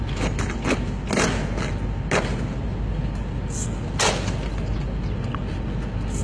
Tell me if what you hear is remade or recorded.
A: recorded